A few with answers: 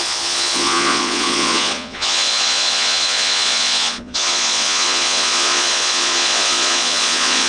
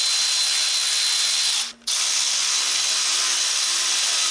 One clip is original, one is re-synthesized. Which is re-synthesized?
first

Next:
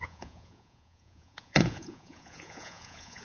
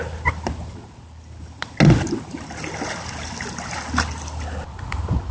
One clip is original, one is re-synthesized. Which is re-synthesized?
first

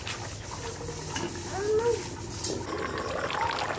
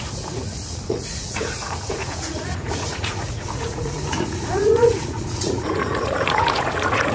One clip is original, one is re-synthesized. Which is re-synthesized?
second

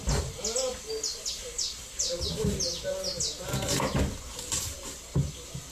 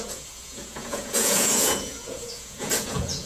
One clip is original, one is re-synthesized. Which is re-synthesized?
second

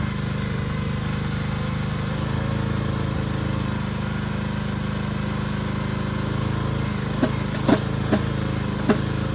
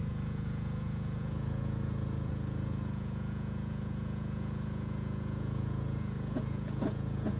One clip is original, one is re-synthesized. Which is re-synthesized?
second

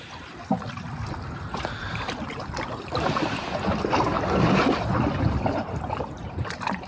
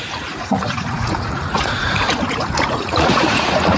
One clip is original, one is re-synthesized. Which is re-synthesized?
second